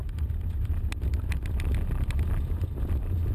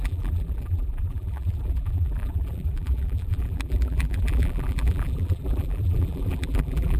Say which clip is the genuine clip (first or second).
first